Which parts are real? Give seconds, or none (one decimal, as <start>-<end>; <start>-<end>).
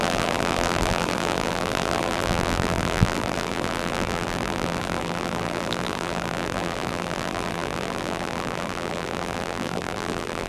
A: none